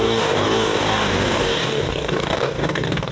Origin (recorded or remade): remade